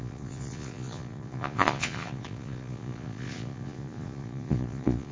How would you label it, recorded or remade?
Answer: remade